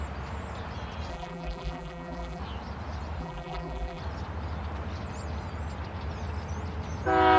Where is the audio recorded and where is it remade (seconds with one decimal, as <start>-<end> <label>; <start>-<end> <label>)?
0.0-1.1 recorded; 1.1-2.4 remade; 2.4-3.2 recorded; 3.2-4.0 remade; 4.0-7.4 recorded